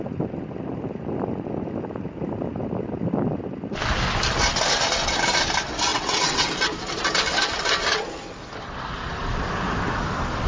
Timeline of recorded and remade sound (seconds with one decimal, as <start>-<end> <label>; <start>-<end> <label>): 0.0-5.9 recorded; 5.9-6.5 remade; 6.5-10.5 recorded